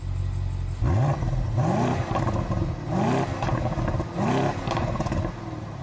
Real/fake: real